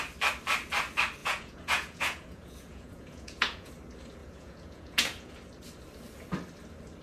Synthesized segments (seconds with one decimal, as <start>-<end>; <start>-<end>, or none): 1.2-3.7; 4.2-5.3